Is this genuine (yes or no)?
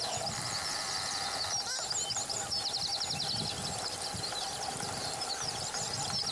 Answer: yes